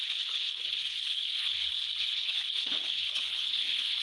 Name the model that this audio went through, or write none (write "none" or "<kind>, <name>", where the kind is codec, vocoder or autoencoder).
codec, HILCodec